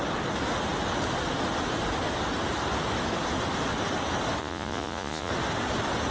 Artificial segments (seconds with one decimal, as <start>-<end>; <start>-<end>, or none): 4.4-5.3